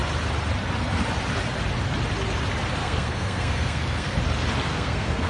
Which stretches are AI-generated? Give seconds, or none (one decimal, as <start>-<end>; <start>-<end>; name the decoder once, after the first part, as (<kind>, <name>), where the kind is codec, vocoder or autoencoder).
2.8-4.2 (codec, SNAC); 4.7-5.3